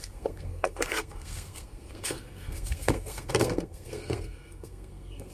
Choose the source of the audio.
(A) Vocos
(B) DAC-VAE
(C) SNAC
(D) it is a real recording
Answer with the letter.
C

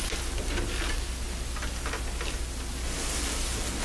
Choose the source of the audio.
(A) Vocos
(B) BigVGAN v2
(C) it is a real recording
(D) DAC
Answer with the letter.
C